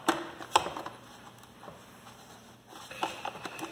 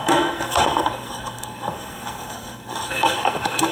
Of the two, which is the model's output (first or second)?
second